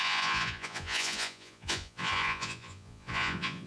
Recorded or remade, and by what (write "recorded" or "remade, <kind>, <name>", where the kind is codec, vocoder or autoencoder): remade, vocoder, Vocos